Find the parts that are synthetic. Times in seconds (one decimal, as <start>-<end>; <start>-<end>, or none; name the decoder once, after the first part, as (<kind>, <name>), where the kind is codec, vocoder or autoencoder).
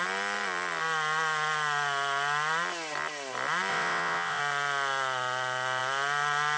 3.7-4.4 (vocoder, WaveNeXt)